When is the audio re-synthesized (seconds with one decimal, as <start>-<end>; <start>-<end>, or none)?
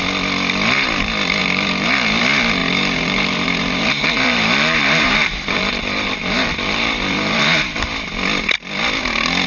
1.4-2.2; 2.6-7.4